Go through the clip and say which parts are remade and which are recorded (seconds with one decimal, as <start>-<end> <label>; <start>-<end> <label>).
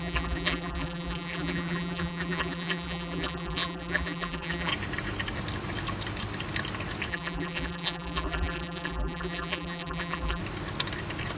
0.0-4.7 remade; 4.7-7.1 recorded; 7.1-10.4 remade; 10.4-11.4 recorded